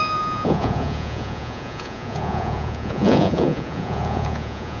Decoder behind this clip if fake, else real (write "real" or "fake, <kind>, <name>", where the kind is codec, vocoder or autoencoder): fake, vocoder, Vocos